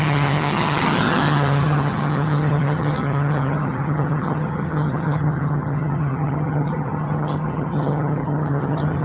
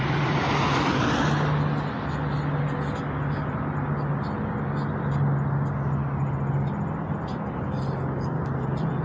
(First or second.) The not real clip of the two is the first